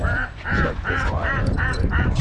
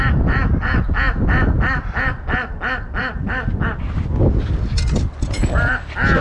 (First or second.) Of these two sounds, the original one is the second